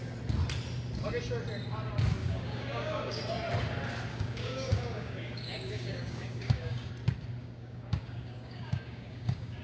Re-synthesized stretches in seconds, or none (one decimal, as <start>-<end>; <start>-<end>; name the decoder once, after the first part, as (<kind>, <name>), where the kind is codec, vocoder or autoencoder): 2.2-3.2 (codec, DAC); 4.1-6.9; 7.4-9.6